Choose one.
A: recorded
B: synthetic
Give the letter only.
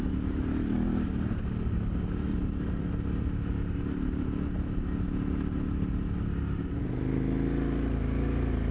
A